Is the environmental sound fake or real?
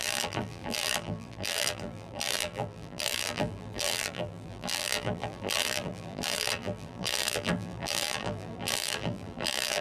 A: fake